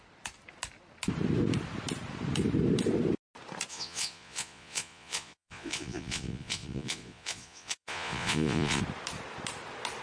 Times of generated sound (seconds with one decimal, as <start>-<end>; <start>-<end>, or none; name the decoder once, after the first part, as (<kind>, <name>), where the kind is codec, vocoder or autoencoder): 3.7-8.8 (vocoder, Vocos)